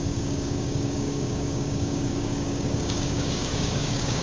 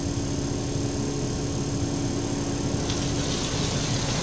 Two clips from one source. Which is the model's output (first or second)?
first